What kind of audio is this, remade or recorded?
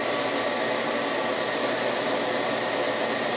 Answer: recorded